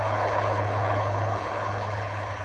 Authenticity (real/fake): fake